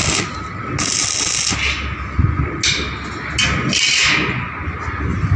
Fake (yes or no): no